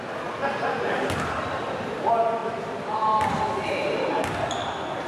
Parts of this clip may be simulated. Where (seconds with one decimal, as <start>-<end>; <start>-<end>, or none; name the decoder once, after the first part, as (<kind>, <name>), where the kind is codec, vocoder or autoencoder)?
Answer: none